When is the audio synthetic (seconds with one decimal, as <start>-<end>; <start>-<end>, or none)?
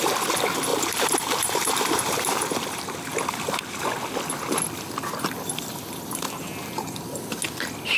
0.7-2.4